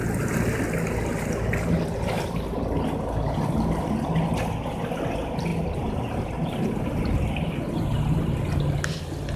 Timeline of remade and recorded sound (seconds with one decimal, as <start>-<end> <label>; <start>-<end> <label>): 0.0-5.5 recorded; 5.5-7.0 remade; 7.0-9.4 recorded